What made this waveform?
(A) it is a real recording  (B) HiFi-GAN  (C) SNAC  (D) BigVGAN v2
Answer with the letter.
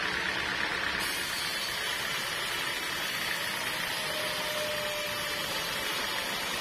A